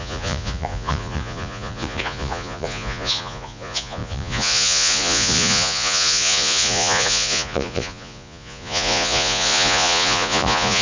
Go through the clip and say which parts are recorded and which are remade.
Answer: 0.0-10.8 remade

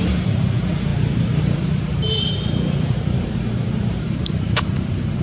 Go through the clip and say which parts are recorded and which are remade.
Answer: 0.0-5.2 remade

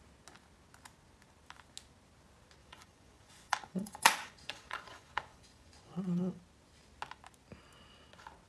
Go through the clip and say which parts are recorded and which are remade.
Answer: 0.0-2.6 recorded; 2.6-6.4 remade; 6.4-8.5 recorded

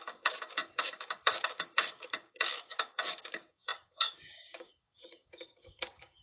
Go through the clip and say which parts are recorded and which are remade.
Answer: 0.0-6.2 remade

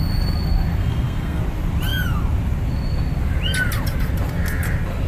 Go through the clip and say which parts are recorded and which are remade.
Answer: 0.0-0.8 recorded; 0.8-1.4 remade; 1.4-5.1 recorded

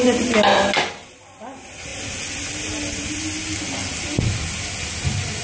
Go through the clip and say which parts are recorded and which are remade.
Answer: 0.0-5.4 recorded